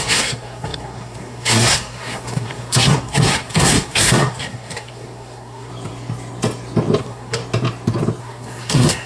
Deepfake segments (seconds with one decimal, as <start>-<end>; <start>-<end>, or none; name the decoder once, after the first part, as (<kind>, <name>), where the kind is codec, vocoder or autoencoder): 0.0-5.7 (codec, SNAC); 7.0-7.4; 8.2-9.1